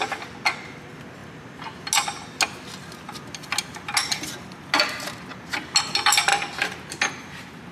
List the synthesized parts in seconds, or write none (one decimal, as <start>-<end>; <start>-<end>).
none